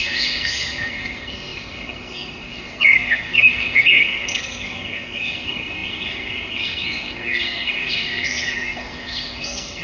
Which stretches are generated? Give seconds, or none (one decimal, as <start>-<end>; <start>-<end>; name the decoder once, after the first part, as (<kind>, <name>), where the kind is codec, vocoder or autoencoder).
0.0-9.8 (codec, SNAC)